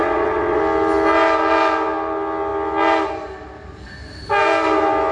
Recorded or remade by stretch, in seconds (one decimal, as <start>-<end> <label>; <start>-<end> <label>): 0.0-0.6 remade; 0.6-5.1 recorded